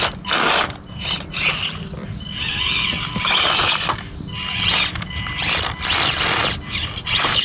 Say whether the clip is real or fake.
real